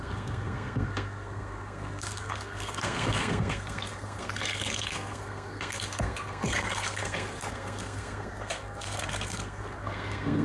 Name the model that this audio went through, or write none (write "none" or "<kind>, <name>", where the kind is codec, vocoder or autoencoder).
codec, SNAC